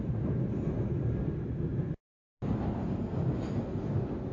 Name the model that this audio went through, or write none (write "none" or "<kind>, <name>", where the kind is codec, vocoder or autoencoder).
none